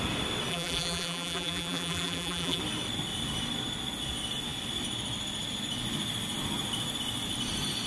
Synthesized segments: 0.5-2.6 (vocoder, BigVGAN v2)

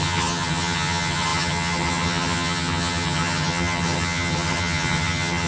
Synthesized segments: 0.0-5.5 (vocoder, HiFi-GAN)

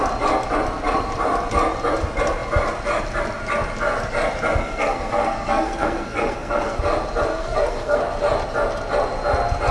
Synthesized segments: 4.6-6.8 (codec, SNAC); 7.3-8.0

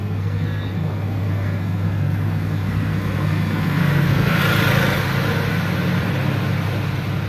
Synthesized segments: 0.0-4.4 (codec, SNAC)

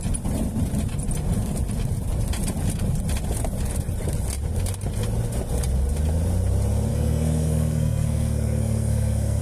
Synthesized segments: 6.9-9.4 (codec, SNAC)